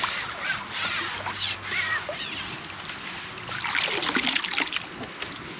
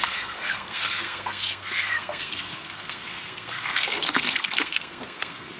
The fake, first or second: second